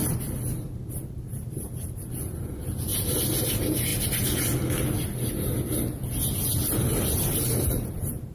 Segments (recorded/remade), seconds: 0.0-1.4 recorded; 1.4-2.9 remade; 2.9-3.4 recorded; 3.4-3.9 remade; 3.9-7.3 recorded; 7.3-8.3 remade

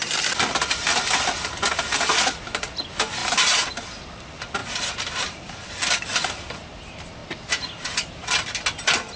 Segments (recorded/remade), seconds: 0.0-7.2 remade; 7.2-9.2 recorded